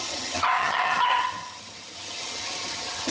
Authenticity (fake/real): fake